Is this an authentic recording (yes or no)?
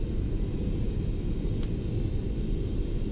yes